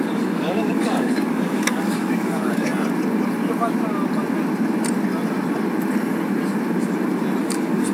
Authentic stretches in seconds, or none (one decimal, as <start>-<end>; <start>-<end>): 2.7-7.4